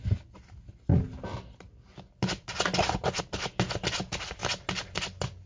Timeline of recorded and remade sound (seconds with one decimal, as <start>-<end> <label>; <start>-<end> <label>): 0.0-5.5 recorded